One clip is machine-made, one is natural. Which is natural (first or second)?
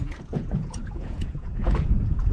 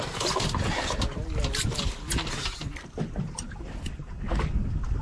second